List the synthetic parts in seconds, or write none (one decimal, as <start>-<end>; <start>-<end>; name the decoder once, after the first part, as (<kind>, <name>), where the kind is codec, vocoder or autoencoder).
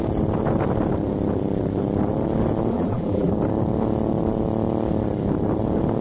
2.7-3.3 (vocoder, BigVGAN v2)